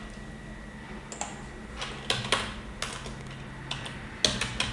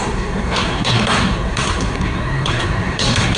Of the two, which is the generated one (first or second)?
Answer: second